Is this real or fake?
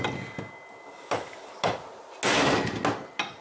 real